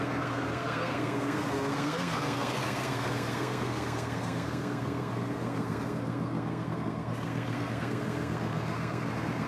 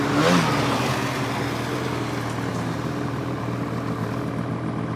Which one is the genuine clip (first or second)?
second